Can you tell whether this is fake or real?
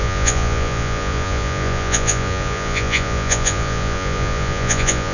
fake